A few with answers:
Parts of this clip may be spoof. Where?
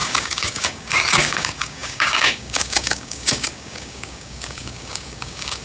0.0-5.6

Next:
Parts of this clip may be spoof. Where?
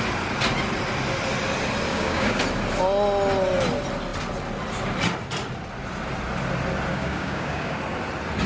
1.9-2.4; 6.9-7.8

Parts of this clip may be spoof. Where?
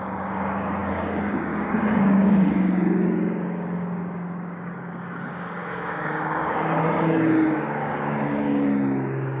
0.0-9.4